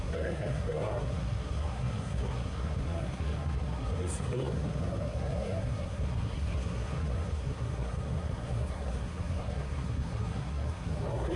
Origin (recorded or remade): remade